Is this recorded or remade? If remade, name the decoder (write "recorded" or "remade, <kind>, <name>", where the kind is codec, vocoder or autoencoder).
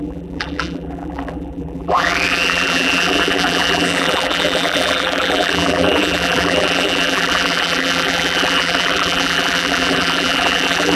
remade, vocoder, BigVGAN v2